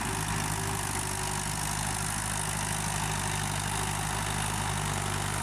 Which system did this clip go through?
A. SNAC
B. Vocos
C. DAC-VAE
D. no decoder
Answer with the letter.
D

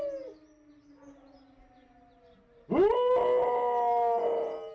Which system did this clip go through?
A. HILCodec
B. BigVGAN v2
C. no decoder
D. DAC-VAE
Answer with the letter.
C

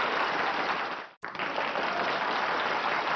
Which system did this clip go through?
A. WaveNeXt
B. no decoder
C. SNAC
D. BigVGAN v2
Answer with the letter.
B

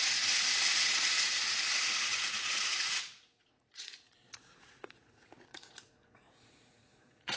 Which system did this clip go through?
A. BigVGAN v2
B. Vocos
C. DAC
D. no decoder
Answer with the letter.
B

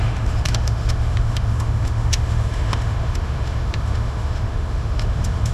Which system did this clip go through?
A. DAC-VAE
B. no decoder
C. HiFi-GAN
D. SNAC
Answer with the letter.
A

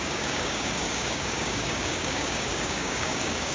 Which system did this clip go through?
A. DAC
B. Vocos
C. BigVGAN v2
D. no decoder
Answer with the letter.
A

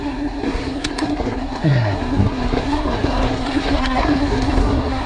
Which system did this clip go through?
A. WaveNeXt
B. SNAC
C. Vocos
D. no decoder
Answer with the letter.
B